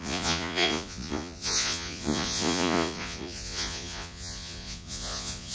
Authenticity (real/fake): fake